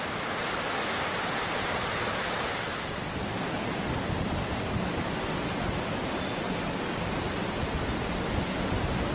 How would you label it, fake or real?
real